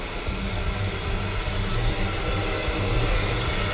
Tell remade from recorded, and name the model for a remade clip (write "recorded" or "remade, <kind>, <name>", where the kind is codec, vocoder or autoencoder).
recorded